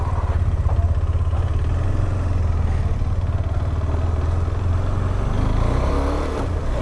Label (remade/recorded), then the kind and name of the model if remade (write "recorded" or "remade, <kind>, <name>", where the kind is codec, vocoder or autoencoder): recorded